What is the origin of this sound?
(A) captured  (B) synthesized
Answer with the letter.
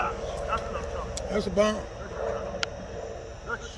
A